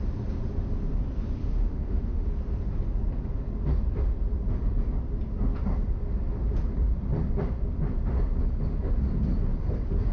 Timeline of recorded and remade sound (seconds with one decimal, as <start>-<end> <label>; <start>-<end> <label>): 0.0-1.4 recorded; 1.4-2.3 remade; 2.3-10.1 recorded